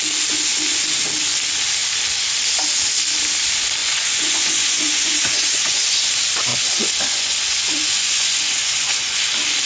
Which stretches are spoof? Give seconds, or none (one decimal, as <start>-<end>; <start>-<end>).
3.8-6.1; 6.5-9.2